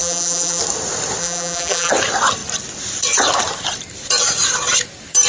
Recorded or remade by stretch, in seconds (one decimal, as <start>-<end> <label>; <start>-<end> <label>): 0.0-0.6 remade; 0.6-1.2 recorded; 1.2-1.9 remade; 1.9-5.3 recorded